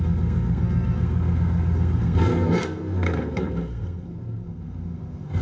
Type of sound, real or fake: fake